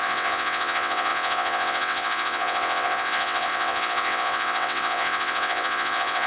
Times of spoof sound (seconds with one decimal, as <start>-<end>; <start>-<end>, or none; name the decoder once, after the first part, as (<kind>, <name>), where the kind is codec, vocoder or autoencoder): 0.0-6.3 (vocoder, WaveNeXt)